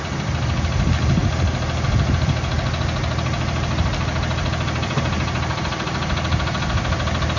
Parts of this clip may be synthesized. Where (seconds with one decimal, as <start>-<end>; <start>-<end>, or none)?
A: none